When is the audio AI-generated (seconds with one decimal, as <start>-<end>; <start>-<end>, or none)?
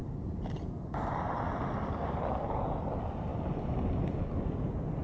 none